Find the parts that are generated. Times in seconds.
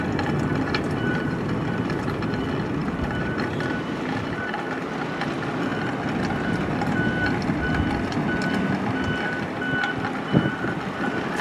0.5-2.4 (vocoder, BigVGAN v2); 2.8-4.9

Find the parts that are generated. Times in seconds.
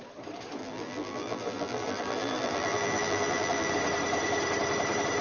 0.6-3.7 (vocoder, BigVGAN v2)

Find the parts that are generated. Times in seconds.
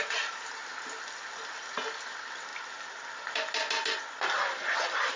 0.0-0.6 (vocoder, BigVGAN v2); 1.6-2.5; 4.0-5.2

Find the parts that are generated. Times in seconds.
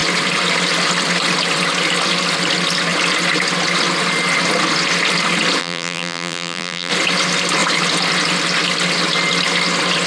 5.6-6.9 (vocoder, BigVGAN v2)